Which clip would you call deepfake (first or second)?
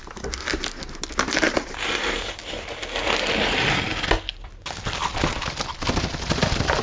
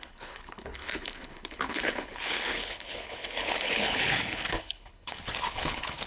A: second